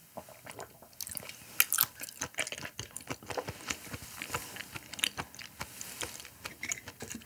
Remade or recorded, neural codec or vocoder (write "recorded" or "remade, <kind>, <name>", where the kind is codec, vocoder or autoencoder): recorded